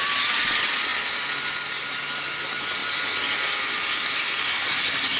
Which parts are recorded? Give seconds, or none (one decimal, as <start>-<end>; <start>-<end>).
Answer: 0.9-1.7

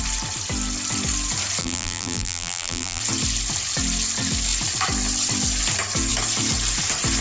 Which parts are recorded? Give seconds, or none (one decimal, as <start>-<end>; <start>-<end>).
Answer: 0.0-1.6; 3.0-7.2

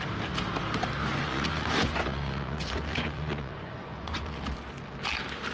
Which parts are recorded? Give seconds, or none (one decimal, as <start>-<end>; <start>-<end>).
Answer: 0.0-1.1; 4.4-5.5